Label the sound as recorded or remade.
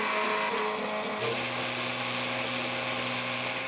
recorded